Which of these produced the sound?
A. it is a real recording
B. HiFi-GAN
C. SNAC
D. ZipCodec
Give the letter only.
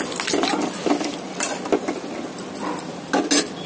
A